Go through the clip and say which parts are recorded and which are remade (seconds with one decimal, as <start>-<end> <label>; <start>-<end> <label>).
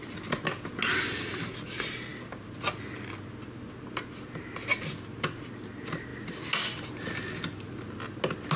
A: 0.0-8.6 recorded